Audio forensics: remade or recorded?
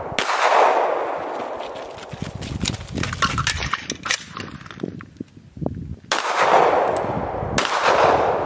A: recorded